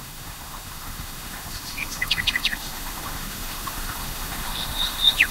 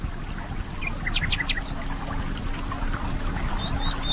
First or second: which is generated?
first